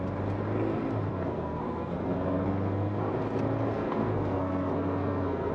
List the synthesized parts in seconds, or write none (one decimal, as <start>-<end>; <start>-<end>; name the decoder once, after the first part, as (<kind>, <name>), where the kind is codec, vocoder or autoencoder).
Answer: 1.1-3.1 (codec, SNAC); 3.7-5.5